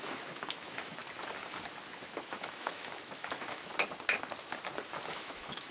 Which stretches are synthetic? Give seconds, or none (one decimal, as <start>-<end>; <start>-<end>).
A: 0.0-1.0; 2.3-3.7; 5.1-5.7